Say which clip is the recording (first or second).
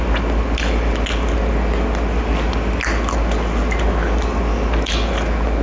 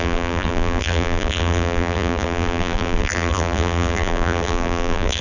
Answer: first